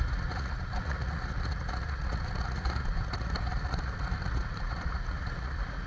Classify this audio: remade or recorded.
remade